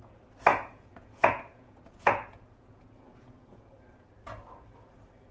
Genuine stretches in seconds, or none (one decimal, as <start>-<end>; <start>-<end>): 0.0-0.5; 3.7-5.3